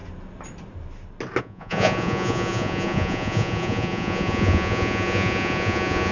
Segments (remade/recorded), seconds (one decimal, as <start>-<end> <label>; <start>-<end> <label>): 0.0-1.4 recorded; 1.4-6.1 remade